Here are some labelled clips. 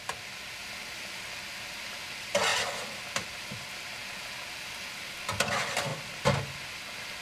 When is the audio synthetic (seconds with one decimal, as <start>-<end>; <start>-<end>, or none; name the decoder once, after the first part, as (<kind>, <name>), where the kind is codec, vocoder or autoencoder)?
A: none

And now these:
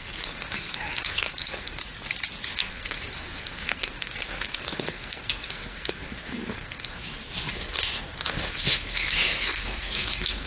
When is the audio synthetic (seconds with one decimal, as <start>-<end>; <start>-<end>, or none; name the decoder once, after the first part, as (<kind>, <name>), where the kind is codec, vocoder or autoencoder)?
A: 0.0-1.8 (codec, SNAC); 2.5-7.0; 7.5-10.5

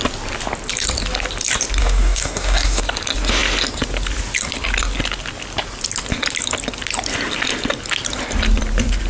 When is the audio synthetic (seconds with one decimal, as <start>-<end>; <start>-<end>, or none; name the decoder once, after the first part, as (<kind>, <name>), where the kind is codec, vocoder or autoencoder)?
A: 1.8-2.8 (codec, DAC)

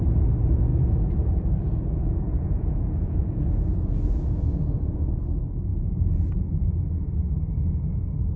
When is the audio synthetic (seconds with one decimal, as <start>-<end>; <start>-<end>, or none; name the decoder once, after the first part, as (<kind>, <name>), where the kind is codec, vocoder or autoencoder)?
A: 0.7-5.1 (vocoder, Vocos)

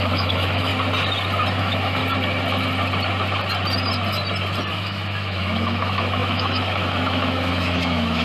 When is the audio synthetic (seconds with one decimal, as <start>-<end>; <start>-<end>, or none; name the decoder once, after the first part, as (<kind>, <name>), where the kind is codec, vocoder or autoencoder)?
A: 0.0-0.7 (autoencoder, DAC-VAE); 1.6-2.0; 4.7-8.2